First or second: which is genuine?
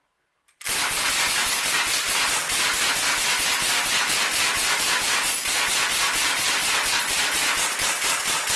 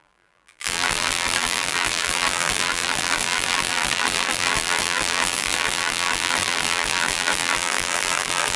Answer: first